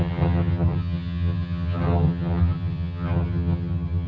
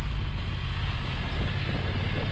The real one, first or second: second